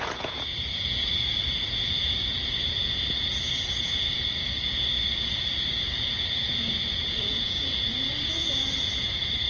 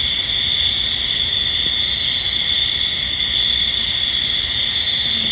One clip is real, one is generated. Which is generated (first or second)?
first